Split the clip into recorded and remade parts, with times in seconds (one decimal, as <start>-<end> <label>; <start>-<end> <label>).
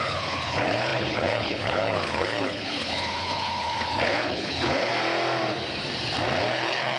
0.0-4.9 remade; 4.9-6.4 recorded; 6.4-7.0 remade